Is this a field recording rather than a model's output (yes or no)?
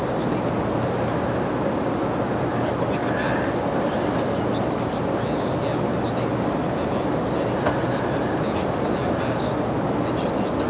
yes